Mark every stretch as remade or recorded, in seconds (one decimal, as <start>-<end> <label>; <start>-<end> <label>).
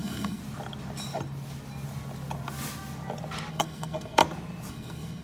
0.0-0.4 remade; 0.4-3.5 recorded; 3.5-4.2 remade; 4.2-4.7 recorded; 4.7-5.2 remade